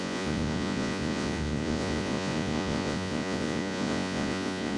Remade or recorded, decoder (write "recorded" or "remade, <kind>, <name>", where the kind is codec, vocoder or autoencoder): remade, vocoder, Vocos